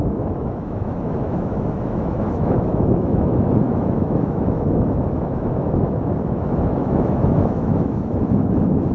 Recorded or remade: remade